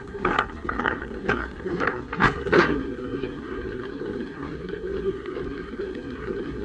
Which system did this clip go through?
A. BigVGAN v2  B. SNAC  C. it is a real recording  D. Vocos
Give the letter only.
B